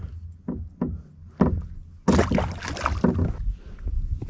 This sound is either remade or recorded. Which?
recorded